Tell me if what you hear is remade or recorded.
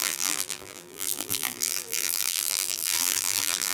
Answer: remade